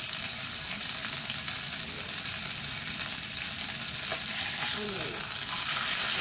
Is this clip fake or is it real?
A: real